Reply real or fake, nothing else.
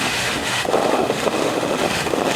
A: fake